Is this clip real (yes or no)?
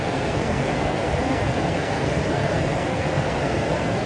no